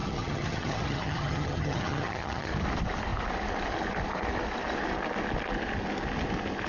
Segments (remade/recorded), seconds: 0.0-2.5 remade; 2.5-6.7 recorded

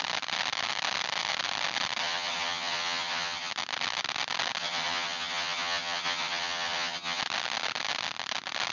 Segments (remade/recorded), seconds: 0.0-2.0 recorded; 2.0-3.5 remade; 3.5-4.6 recorded; 4.6-7.2 remade; 7.2-8.7 recorded

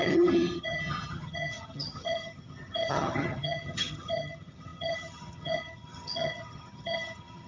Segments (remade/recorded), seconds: 0.0-7.5 remade

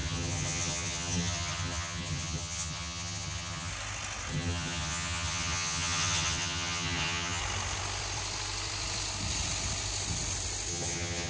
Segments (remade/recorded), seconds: 0.0-3.7 remade; 3.7-4.3 recorded; 4.3-7.4 remade; 7.4-10.7 recorded; 10.7-11.3 remade